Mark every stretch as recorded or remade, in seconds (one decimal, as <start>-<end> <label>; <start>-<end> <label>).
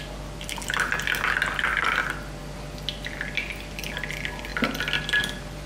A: 0.0-5.7 recorded